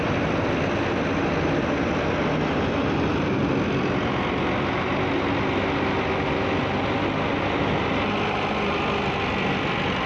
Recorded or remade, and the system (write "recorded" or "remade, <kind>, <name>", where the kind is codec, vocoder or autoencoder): recorded